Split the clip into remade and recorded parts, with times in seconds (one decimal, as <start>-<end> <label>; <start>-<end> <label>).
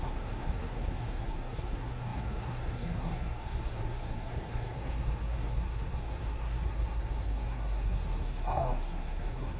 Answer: 0.0-9.6 remade